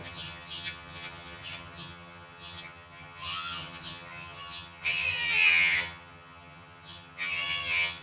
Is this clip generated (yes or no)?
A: yes